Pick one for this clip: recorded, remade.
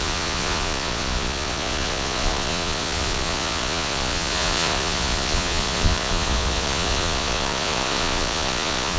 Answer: remade